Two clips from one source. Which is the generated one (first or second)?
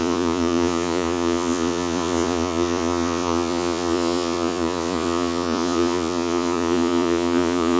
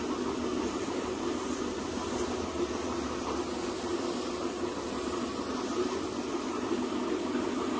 first